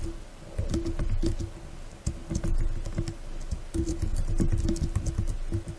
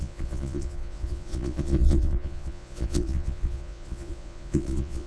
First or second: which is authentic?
first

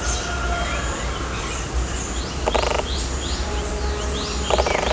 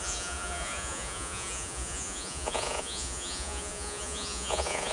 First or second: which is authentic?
first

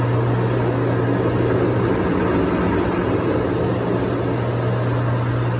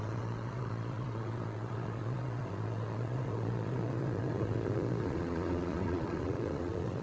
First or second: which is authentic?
first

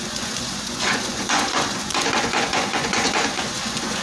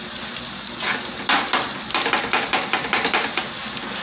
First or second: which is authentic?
second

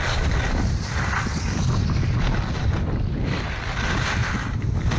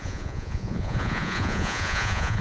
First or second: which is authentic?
first